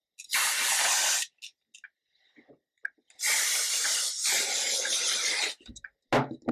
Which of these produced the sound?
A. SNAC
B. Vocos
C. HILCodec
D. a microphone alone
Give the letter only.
D